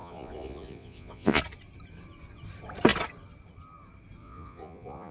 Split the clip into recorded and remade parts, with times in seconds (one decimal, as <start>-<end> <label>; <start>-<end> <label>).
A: 0.0-1.4 remade; 1.4-4.2 recorded; 4.2-5.1 remade